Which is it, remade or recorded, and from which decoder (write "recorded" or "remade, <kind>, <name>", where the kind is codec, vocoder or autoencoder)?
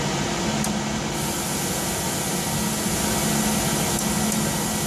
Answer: recorded